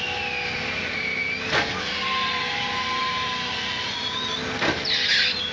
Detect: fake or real real